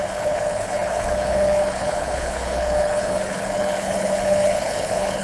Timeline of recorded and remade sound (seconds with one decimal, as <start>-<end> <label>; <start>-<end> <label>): 0.0-5.2 remade